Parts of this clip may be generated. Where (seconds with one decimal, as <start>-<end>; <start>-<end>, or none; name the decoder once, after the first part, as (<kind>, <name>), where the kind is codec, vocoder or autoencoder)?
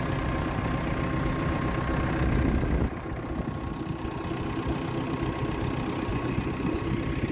6.1-6.8 (vocoder, Vocos)